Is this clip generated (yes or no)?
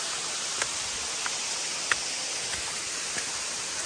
no